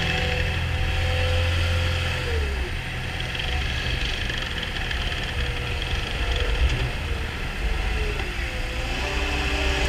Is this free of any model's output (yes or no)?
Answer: yes